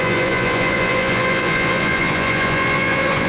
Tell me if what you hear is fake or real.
fake